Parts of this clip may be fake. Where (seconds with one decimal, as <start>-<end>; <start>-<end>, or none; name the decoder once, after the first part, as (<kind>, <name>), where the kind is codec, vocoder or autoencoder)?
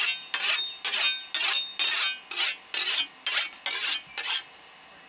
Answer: none